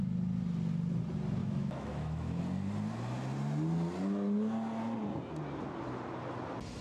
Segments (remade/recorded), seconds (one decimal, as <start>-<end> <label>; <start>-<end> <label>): 0.0-1.4 recorded; 1.4-2.4 remade; 2.4-6.8 recorded